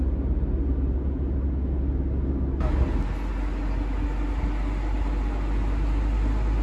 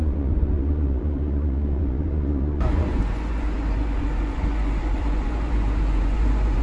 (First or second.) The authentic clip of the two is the first